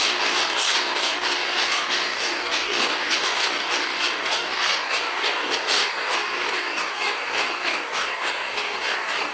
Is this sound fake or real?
fake